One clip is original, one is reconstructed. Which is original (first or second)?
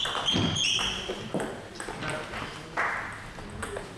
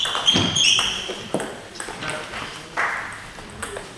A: first